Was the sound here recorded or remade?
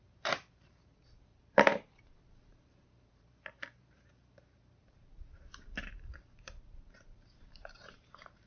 remade